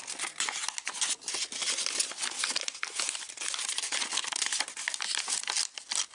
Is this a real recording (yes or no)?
yes